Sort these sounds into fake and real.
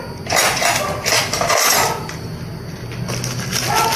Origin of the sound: real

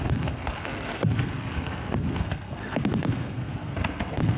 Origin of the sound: fake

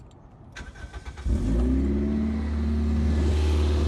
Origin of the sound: real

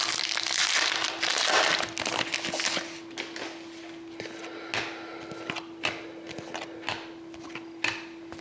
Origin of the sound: real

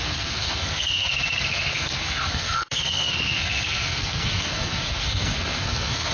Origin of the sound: fake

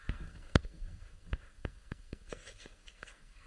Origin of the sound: fake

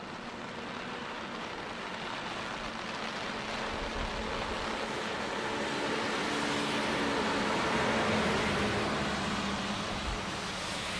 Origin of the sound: real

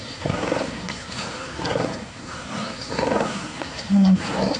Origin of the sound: fake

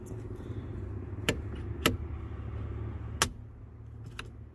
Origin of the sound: real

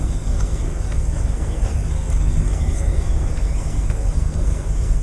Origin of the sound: fake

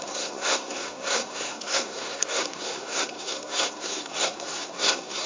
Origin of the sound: fake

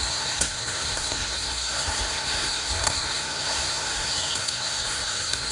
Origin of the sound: fake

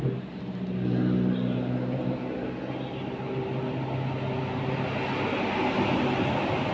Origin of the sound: real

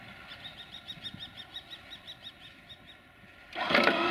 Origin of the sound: real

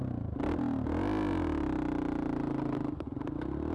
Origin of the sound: real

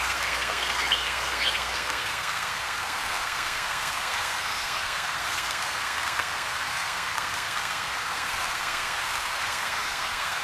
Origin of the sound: fake